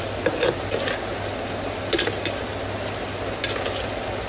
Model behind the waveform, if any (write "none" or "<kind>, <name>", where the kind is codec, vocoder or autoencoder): none